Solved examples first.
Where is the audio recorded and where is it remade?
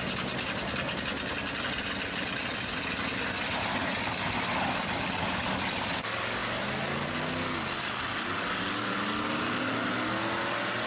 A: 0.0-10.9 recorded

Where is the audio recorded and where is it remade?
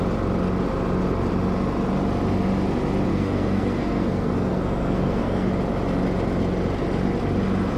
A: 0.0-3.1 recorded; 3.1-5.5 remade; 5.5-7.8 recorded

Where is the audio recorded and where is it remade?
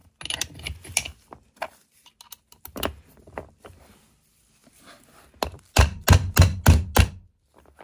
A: 0.0-7.8 recorded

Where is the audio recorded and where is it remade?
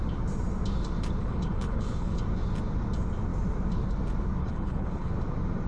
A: 0.0-1.2 recorded; 1.2-2.2 remade; 2.2-4.4 recorded; 4.4-5.1 remade; 5.1-5.7 recorded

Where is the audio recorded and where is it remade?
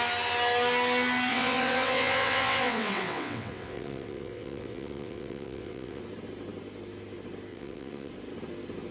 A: 0.0-1.3 recorded; 1.3-6.0 remade; 6.0-7.5 recorded; 7.5-8.1 remade; 8.1-8.9 recorded